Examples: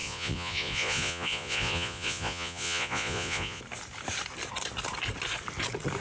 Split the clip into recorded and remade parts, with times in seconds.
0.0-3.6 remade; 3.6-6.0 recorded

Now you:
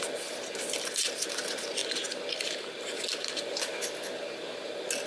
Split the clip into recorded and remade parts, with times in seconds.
0.0-5.1 recorded

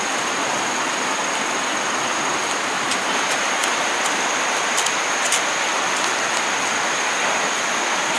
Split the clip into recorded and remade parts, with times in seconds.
0.0-8.2 recorded

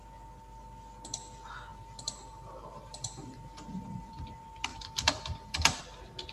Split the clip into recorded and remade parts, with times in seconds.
0.0-1.7 recorded; 1.7-4.2 remade; 4.2-4.7 recorded; 4.7-5.8 remade; 5.8-6.3 recorded

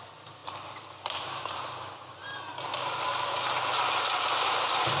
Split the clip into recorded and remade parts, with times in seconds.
0.0-2.2 remade; 2.2-4.4 recorded; 4.4-5.0 remade